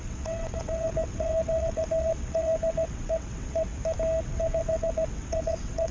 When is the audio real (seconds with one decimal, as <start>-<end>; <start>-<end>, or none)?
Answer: 3.7-4.2